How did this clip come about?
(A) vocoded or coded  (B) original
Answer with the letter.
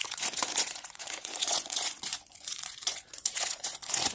A